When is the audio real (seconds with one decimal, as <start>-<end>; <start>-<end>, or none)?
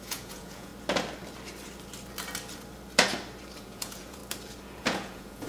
0.7-3.6; 4.2-4.8